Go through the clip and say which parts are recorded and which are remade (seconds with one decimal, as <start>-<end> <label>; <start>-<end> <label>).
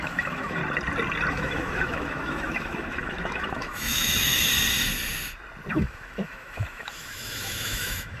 0.0-0.6 remade; 0.6-1.3 recorded; 1.3-4.5 remade; 4.5-5.7 recorded; 5.7-8.2 remade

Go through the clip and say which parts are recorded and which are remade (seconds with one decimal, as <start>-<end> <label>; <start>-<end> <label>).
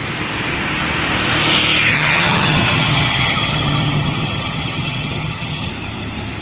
0.0-1.9 recorded; 1.9-5.7 remade; 5.7-6.4 recorded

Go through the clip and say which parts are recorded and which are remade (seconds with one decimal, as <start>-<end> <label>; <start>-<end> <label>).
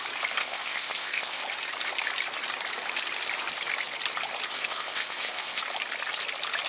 0.0-0.4 recorded; 0.4-1.4 remade; 1.4-4.5 recorded; 4.5-5.6 remade; 5.6-6.7 recorded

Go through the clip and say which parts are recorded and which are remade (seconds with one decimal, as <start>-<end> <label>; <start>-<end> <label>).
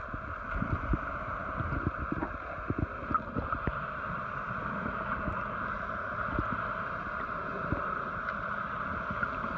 0.0-9.6 recorded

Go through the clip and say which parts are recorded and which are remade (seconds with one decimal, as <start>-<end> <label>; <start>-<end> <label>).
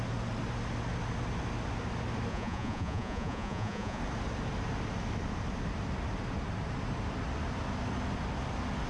0.0-2.3 recorded; 2.3-4.0 remade; 4.0-8.9 recorded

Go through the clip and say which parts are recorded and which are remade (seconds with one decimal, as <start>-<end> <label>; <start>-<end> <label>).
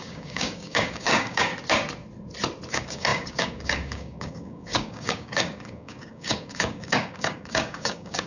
0.0-1.5 remade; 1.5-2.7 recorded; 2.7-8.3 remade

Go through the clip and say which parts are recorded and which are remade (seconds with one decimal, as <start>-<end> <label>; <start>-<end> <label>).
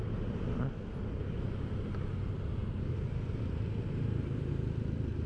0.0-5.3 recorded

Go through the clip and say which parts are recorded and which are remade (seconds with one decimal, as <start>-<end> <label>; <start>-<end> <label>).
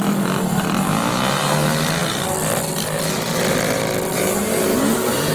0.0-2.0 recorded; 2.0-5.3 remade